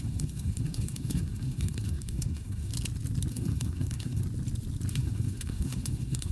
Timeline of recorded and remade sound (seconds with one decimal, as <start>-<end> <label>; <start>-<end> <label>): 0.0-2.7 remade; 2.7-3.3 recorded; 3.3-4.2 remade; 4.2-4.9 recorded; 4.9-6.3 remade